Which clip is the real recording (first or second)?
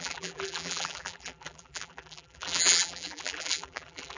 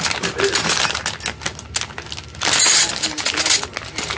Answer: second